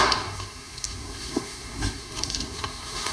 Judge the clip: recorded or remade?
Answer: remade